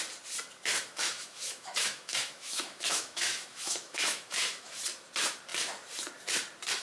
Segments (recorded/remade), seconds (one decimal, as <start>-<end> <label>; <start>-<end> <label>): 0.0-0.7 recorded; 0.7-4.8 remade; 4.8-6.8 recorded